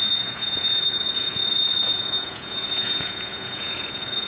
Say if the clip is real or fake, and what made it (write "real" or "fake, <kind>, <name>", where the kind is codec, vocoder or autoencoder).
fake, vocoder, Vocos